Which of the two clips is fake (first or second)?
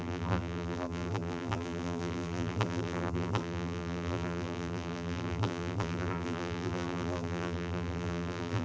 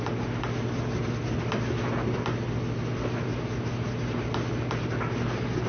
first